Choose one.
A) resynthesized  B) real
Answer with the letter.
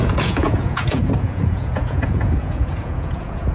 A